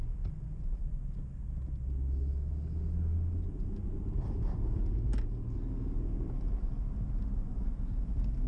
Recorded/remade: recorded